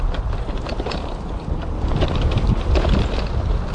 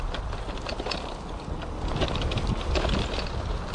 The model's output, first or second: first